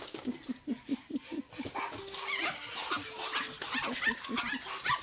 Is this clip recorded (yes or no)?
yes